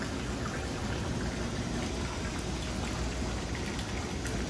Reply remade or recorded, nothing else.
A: recorded